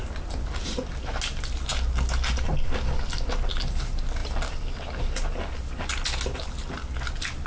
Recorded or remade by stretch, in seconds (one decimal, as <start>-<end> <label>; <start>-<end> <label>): 0.0-7.5 recorded